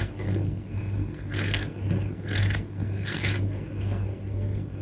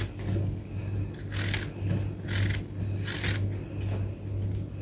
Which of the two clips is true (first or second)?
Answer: second